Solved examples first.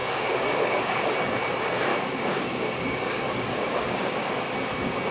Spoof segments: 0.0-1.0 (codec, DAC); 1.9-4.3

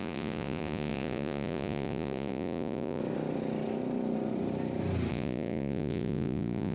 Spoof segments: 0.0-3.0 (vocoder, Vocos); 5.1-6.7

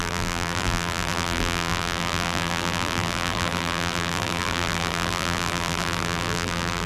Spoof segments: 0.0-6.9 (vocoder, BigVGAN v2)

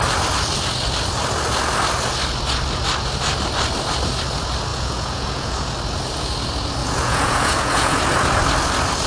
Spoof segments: 4.7-5.5 (vocoder, Vocos); 6.8-8.0